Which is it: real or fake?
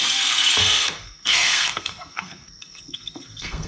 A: fake